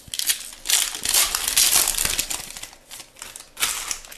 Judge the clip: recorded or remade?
recorded